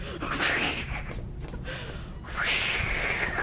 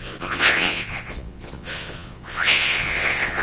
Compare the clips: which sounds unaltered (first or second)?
first